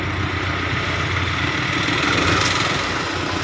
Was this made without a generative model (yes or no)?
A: yes